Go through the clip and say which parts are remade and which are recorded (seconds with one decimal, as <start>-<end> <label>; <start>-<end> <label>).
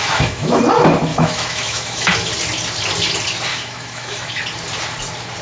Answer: 0.0-0.6 remade; 0.6-1.1 recorded; 1.1-2.1 remade; 2.1-3.5 recorded; 3.5-4.4 remade; 4.4-5.4 recorded